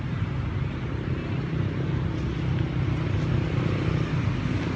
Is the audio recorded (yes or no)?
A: yes